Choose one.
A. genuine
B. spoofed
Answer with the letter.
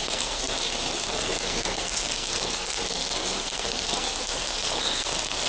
B